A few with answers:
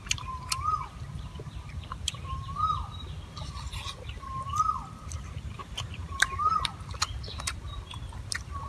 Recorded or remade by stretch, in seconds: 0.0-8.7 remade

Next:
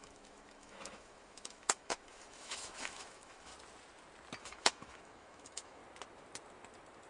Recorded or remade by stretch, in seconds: 0.0-3.5 remade; 3.5-4.4 recorded; 4.4-5.8 remade; 5.8-7.1 recorded

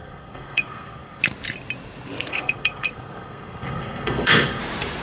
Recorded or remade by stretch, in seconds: 0.0-1.2 remade; 1.2-2.3 recorded; 2.3-4.6 remade; 4.6-5.0 recorded

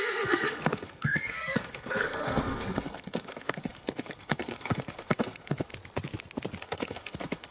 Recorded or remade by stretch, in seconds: 0.0-5.7 remade; 5.7-6.6 recorded; 6.6-7.5 remade

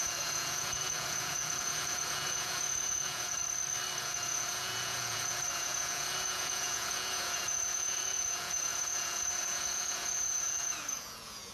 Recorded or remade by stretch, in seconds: 0.0-3.4 remade; 3.4-4.0 recorded; 4.0-11.5 remade